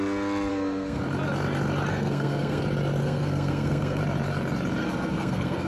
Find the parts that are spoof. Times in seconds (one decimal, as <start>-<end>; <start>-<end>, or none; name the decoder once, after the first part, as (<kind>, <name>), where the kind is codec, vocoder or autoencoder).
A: 0.5-1.0 (codec, SNAC); 1.9-2.6; 3.0-4.0; 4.8-5.7